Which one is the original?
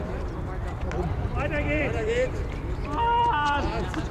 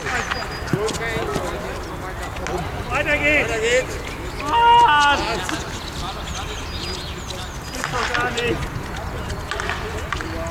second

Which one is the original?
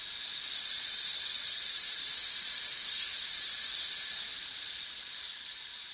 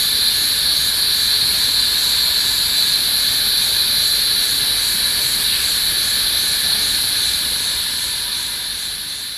second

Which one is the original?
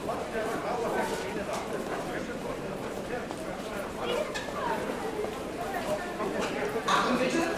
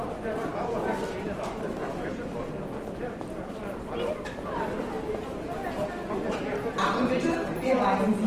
second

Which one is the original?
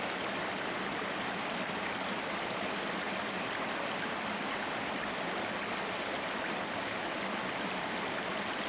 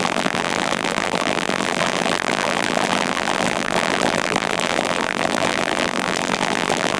first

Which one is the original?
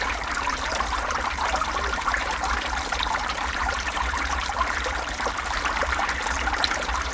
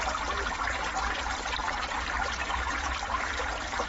second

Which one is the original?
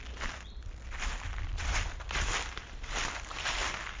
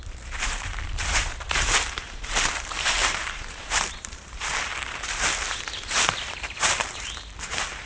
first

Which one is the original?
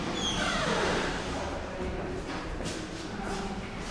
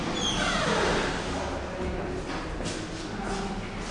second